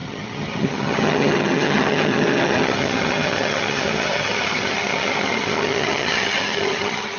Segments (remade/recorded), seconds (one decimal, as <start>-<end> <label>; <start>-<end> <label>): 0.0-7.2 remade